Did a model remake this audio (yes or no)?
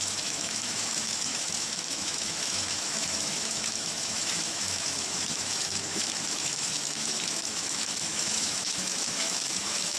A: yes